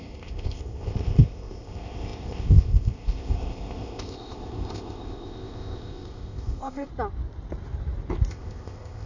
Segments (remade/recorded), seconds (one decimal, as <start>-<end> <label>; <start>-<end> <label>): 0.0-6.9 remade; 6.9-8.3 recorded; 8.3-9.1 remade